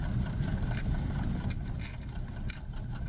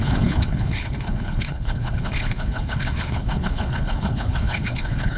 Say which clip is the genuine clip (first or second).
first